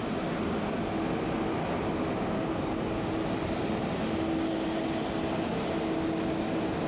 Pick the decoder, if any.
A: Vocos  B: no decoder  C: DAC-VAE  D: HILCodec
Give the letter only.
B